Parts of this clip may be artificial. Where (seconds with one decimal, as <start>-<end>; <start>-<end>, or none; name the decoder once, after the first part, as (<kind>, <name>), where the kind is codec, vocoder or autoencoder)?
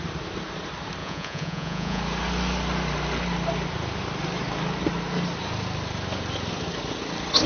1.0-2.0 (vocoder, Vocos)